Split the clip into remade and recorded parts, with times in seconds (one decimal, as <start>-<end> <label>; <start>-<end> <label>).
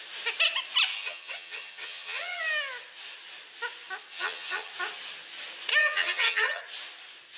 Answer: 0.0-0.9 recorded; 0.9-2.4 remade; 2.4-4.1 recorded; 4.1-4.7 remade; 4.7-5.8 recorded; 5.8-6.6 remade; 6.6-7.4 recorded